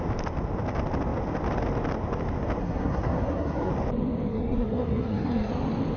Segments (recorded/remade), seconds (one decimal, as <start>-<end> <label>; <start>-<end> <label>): 0.0-2.6 recorded; 2.6-3.7 remade; 3.7-4.3 recorded; 4.3-5.5 remade; 5.5-6.0 recorded